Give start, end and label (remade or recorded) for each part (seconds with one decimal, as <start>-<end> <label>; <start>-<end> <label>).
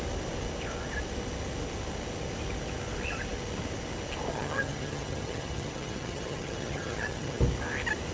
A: 0.0-4.3 recorded; 4.3-7.4 remade; 7.4-8.1 recorded